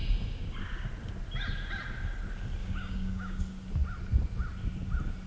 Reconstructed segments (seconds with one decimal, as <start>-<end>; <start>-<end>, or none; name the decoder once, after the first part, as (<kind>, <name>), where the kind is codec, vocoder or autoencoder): 2.6-3.4 (codec, DAC)